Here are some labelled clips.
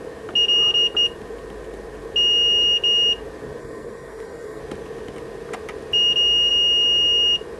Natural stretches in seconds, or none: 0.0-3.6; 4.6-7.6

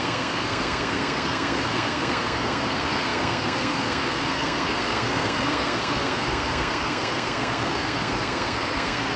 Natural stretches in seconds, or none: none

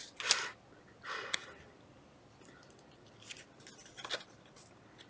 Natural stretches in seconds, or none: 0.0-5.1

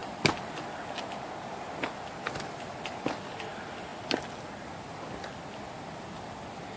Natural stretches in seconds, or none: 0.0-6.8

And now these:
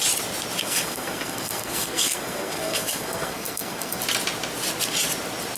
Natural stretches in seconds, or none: 0.0-0.6; 4.0-5.6

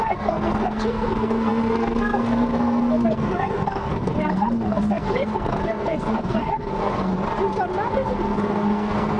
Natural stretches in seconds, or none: 7.1-7.9

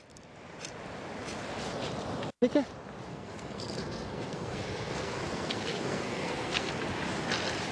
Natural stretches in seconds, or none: 0.0-3.1; 6.7-7.7